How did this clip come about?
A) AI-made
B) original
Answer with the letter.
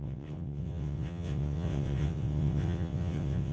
A